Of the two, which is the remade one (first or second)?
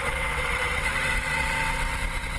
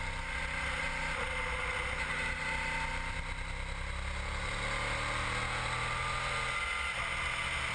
first